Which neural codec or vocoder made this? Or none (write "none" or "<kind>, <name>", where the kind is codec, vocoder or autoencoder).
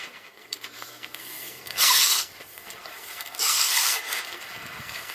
codec, SNAC